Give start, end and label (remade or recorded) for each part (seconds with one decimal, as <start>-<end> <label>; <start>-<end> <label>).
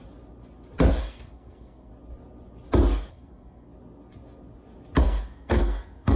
0.0-1.0 recorded; 1.0-1.9 remade; 1.9-3.1 recorded; 3.1-3.7 remade; 3.7-5.0 recorded; 5.0-6.2 remade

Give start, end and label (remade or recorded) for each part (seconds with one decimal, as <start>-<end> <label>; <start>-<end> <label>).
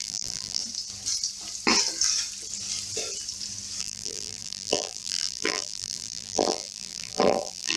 0.0-0.6 remade; 0.6-3.8 recorded; 3.8-7.8 remade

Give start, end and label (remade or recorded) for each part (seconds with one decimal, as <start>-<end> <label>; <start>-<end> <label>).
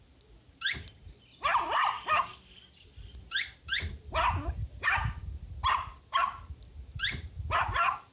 0.0-8.1 recorded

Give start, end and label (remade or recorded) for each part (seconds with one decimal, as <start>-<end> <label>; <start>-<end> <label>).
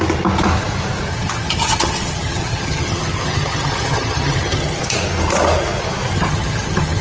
0.0-1.1 recorded; 1.1-4.8 remade; 4.8-6.1 recorded; 6.1-7.0 remade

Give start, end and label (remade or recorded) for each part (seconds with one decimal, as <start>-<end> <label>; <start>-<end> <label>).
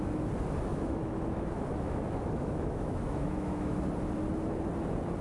0.0-0.7 recorded; 0.7-3.8 remade; 3.8-5.2 recorded